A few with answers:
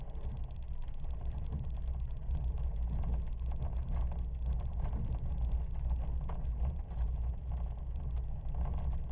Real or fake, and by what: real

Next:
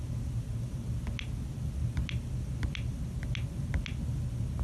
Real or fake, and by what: real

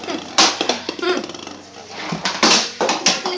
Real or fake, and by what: real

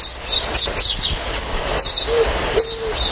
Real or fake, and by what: real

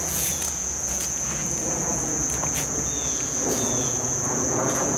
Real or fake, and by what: fake, vocoder, Vocos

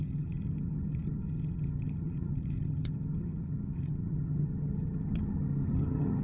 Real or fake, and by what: fake, vocoder, HiFi-GAN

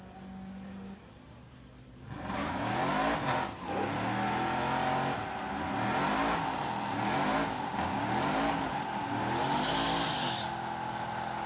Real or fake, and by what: real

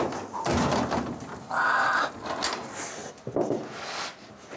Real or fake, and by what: real